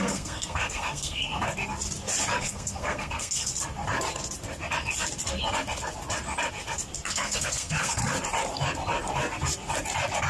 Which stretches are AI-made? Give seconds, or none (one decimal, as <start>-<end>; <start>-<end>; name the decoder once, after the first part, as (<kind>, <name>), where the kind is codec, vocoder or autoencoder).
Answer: 0.0-1.3 (codec, SNAC); 2.4-3.5; 7.1-8.0